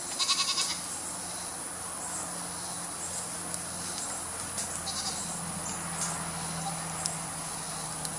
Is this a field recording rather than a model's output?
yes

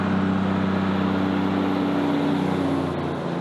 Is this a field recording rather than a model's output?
yes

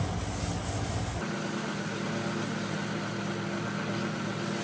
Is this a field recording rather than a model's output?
yes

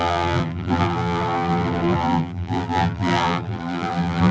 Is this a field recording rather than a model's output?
no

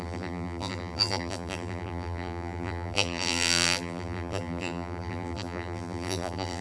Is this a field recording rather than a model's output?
no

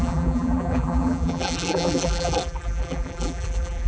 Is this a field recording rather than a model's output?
no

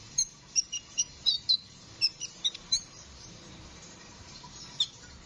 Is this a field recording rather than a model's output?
no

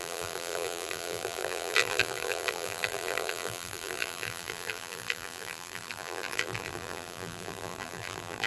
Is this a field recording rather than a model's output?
no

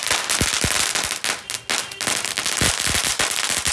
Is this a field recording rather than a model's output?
yes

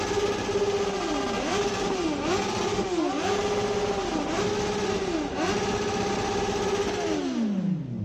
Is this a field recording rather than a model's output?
yes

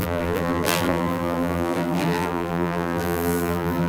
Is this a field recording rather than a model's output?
no